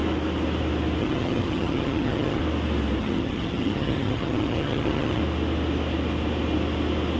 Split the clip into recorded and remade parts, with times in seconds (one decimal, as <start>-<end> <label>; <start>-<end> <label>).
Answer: 0.0-1.0 recorded; 1.0-2.4 remade; 2.4-3.0 recorded; 3.0-5.2 remade; 5.2-7.2 recorded